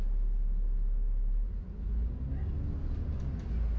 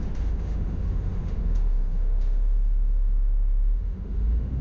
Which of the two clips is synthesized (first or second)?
second